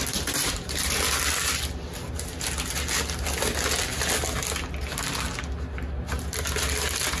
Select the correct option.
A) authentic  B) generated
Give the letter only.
A